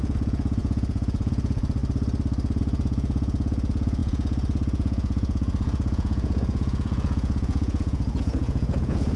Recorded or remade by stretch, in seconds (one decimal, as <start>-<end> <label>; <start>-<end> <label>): 0.0-1.8 remade; 1.8-2.6 recorded; 2.6-9.2 remade